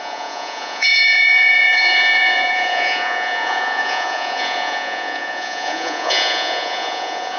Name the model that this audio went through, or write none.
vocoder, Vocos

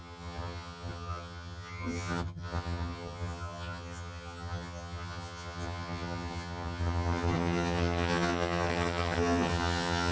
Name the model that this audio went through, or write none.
vocoder, HiFi-GAN